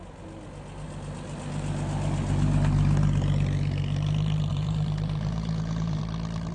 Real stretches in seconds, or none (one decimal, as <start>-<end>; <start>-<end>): 0.0-4.5; 6.0-6.5

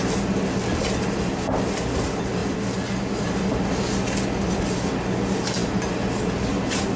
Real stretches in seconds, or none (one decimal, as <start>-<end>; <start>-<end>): 0.0-7.0

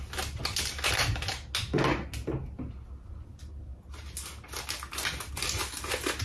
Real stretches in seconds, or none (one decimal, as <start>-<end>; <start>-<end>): 0.0-6.2

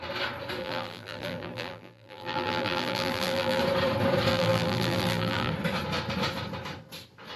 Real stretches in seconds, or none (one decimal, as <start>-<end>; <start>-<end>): 0.0-0.6; 3.6-4.3; 5.5-7.4